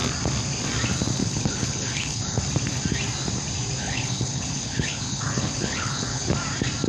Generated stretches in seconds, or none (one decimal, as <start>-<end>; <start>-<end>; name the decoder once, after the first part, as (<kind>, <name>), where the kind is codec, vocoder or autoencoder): 1.2-2.4 (codec, HILCodec); 3.8-6.3